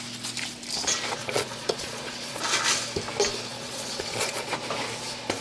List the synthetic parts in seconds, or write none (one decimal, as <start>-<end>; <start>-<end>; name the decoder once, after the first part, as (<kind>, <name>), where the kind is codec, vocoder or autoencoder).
1.2-2.4 (vocoder, Vocos); 3.5-4.5